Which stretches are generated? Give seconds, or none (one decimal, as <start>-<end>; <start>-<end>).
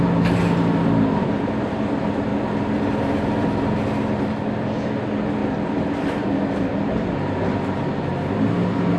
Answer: none